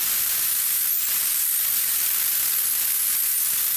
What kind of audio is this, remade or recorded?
recorded